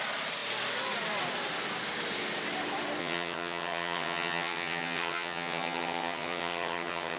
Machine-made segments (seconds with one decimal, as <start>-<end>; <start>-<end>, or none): 3.0-7.2